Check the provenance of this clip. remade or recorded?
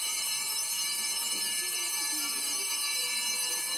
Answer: remade